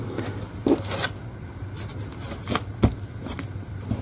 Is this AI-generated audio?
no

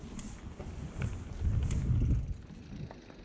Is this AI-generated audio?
no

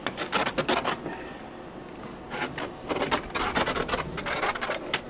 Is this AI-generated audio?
no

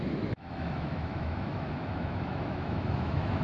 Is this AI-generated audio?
yes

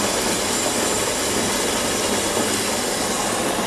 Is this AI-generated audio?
no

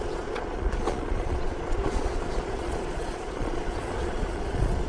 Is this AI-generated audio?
yes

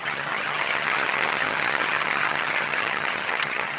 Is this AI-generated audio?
yes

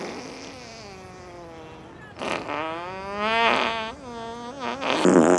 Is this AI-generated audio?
no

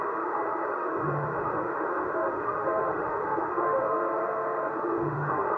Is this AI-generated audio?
yes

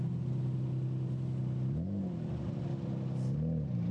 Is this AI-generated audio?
no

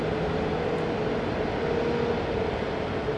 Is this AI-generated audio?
no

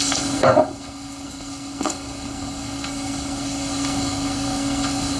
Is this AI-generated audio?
yes